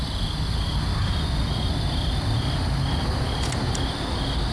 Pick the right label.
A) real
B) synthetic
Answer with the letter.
A